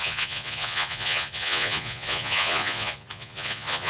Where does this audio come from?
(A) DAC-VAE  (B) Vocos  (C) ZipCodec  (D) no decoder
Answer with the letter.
B